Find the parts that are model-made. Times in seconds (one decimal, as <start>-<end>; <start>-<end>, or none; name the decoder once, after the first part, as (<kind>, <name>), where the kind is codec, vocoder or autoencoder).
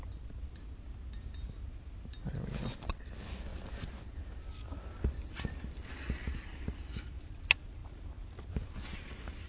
none